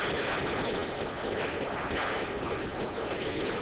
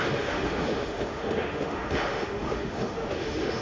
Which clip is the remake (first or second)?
second